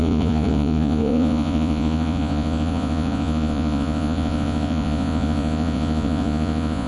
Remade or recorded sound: remade